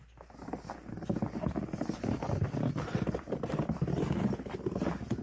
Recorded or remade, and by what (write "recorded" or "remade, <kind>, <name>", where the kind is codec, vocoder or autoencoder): recorded